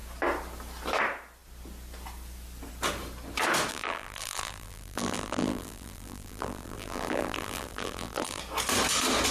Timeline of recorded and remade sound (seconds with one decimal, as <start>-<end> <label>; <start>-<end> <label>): 0.0-3.7 recorded; 3.7-8.4 remade; 8.4-9.3 recorded